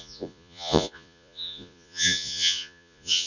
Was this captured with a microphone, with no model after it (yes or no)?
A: no